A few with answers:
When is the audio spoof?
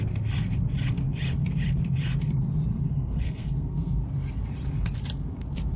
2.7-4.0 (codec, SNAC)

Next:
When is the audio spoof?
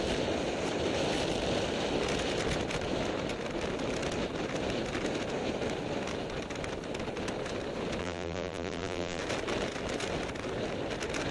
8.0-9.2 (vocoder, BigVGAN v2)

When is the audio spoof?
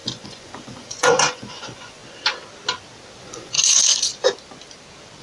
0.0-2.0 (vocoder, Vocos); 3.2-4.1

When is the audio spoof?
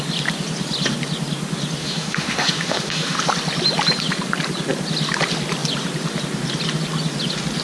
1.8-3.2 (autoencoder, DAC-VAE)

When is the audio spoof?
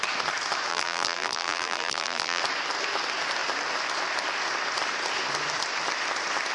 0.7-2.4 (vocoder, BigVGAN v2)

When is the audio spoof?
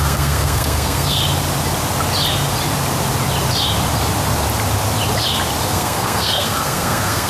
0.0-1.2 (codec, SNAC); 5.6-7.3